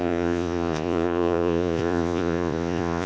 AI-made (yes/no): yes